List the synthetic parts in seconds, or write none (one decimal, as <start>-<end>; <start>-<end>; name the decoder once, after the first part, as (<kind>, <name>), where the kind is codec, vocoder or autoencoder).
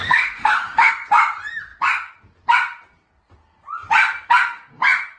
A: 0.0-0.9 (autoencoder, DAC-VAE)